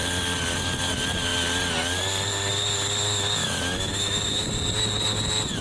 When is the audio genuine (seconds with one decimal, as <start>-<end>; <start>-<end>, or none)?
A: 0.0-3.4; 4.5-5.6